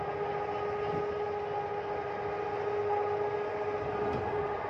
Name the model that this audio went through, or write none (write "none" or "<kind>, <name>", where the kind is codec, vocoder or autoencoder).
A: none